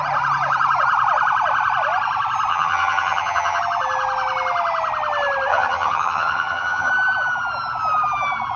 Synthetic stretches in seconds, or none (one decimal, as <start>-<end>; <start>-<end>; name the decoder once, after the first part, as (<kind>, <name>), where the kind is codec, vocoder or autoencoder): 2.5-3.6 (vocoder, HiFi-GAN); 5.5-6.9